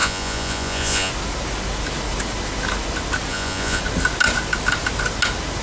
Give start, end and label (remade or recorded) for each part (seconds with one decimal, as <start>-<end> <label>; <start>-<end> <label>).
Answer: 0.0-1.1 remade; 1.1-3.3 recorded; 3.3-3.8 remade; 3.8-5.6 recorded